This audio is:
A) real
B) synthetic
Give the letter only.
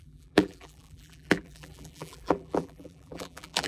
B